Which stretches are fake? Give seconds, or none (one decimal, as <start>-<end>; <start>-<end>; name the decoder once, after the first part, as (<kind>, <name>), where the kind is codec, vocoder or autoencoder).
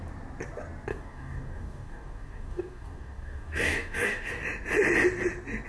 0.9-4.3 (codec, DAC)